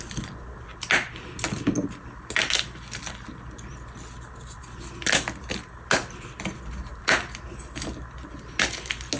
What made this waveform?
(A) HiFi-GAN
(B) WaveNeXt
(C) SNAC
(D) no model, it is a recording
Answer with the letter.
D